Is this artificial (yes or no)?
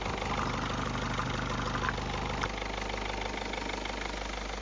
no